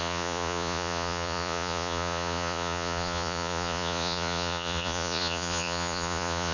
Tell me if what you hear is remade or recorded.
remade